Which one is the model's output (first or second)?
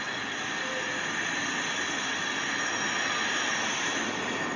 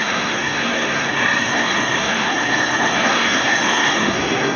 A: second